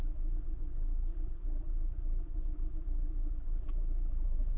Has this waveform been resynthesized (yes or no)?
yes